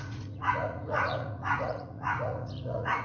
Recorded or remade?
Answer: remade